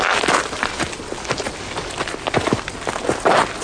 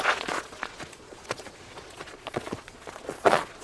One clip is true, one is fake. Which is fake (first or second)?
second